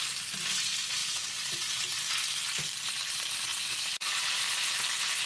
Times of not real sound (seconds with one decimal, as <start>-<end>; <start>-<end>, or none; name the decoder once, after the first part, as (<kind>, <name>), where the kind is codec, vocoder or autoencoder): 1.0-1.8 (vocoder, Vocos); 3.5-4.2